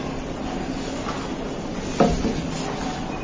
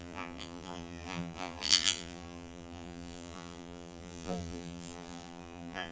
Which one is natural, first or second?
first